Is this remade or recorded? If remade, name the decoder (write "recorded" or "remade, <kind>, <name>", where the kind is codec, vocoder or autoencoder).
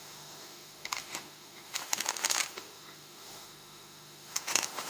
remade, autoencoder, DAC-VAE